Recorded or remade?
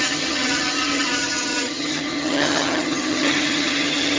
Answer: remade